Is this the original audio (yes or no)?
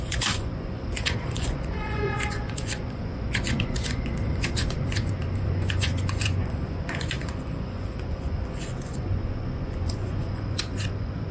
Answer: no